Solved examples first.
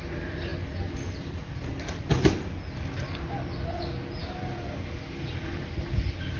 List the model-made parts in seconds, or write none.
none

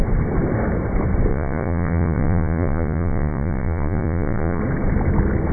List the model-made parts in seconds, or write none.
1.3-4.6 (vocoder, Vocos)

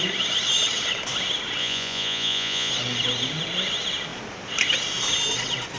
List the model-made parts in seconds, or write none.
1.6-2.7 (vocoder, Vocos)

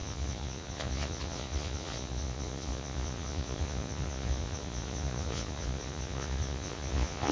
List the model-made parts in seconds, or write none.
0.0-7.3 (vocoder, Vocos)

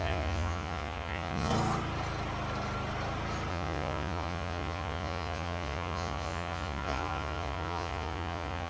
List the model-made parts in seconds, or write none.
0.0-1.5 (vocoder, Vocos); 3.5-8.7

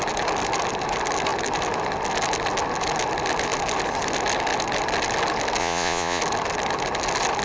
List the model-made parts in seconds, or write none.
5.6-6.2 (vocoder, Vocos)

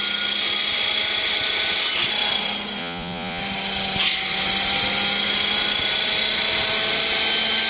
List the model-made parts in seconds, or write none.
2.8-3.4 (vocoder, Vocos)